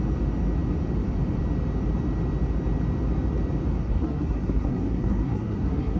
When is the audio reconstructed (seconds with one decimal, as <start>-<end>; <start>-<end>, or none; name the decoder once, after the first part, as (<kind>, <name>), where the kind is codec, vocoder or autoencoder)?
3.8-6.0 (codec, SNAC)